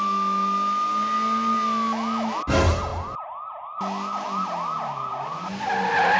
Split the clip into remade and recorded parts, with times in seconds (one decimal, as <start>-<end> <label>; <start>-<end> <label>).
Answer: 0.0-6.2 recorded

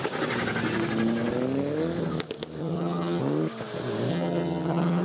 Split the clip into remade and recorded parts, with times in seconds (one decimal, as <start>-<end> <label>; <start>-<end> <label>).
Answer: 0.0-2.6 recorded; 2.6-3.2 remade; 3.2-4.1 recorded; 4.1-5.0 remade

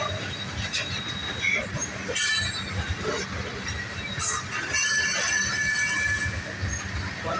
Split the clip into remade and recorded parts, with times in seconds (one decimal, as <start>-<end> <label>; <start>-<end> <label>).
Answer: 0.0-7.4 recorded